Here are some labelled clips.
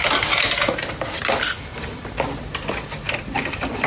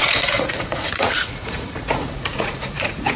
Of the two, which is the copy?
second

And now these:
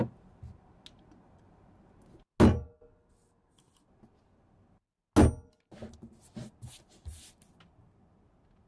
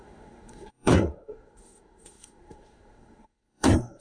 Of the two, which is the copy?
second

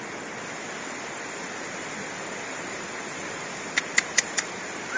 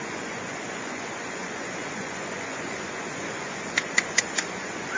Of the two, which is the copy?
second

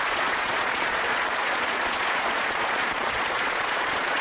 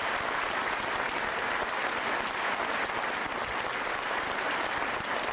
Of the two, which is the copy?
first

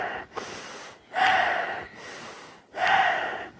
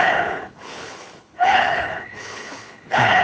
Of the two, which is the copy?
second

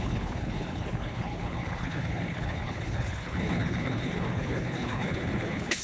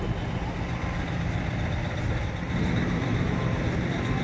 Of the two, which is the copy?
first